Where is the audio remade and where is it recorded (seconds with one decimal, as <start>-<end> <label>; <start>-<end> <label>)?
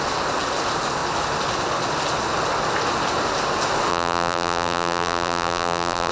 0.0-3.9 recorded; 3.9-6.1 remade